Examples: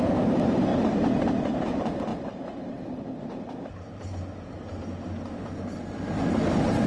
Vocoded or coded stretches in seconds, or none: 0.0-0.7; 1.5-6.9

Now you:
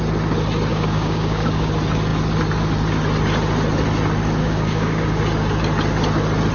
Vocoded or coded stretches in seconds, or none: 0.7-1.7; 4.4-5.2

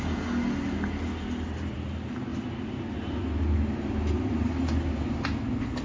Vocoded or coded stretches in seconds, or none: none